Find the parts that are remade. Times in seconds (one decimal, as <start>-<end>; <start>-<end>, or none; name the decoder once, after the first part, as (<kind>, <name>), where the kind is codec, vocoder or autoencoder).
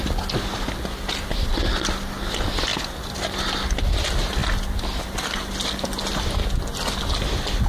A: none